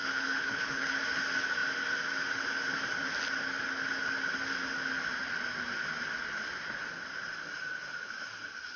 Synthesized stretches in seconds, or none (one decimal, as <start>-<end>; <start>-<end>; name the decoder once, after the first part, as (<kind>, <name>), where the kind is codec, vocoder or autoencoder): 0.0-1.0 (codec, HILCodec)